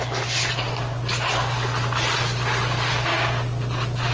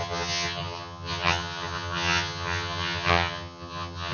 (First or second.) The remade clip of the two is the second